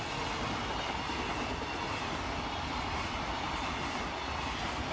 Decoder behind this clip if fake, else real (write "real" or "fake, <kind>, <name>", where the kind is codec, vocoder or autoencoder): real